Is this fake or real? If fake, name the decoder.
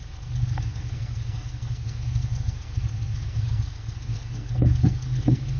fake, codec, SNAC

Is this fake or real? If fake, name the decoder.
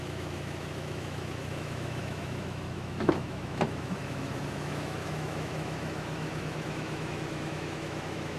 fake, autoencoder, DAC-VAE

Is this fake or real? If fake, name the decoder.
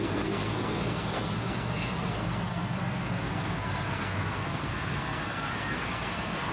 fake, codec, SNAC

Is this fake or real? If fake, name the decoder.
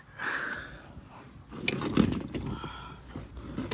real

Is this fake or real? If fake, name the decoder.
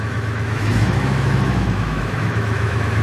fake, autoencoder, DAC-VAE